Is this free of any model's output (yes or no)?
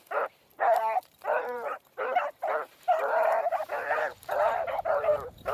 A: no